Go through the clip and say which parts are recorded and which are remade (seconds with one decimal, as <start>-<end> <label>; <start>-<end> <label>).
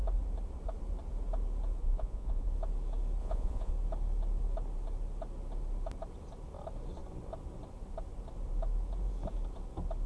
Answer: 0.0-1.8 recorded; 1.8-2.5 remade; 2.5-3.2 recorded; 3.2-3.7 remade; 3.7-10.1 recorded